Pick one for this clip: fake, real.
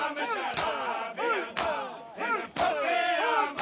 real